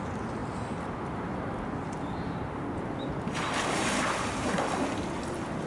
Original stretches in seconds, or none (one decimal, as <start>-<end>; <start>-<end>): 0.0-5.7